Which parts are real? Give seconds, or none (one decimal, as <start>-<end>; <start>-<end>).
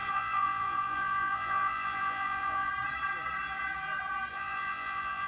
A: 2.7-4.3